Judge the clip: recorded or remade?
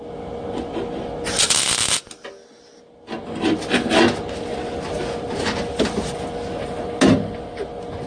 recorded